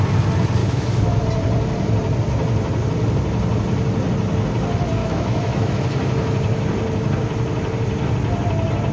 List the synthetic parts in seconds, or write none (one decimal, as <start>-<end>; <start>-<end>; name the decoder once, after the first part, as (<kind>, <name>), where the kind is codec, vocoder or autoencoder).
0.6-1.2 (autoencoder, DAC-VAE); 5.0-5.7